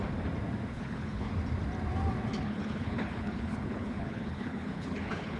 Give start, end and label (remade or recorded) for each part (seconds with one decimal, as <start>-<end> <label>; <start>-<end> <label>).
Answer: 0.0-0.7 recorded; 0.7-1.3 remade; 1.3-2.4 recorded; 2.4-5.4 remade